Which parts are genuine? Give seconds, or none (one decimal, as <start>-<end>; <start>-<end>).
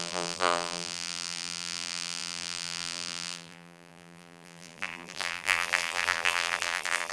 none